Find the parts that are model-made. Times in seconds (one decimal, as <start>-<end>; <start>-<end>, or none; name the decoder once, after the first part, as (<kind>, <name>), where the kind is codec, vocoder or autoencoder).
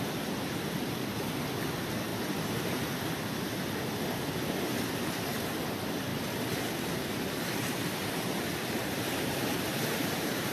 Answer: 2.1-2.8 (vocoder, BigVGAN v2); 6.1-10.5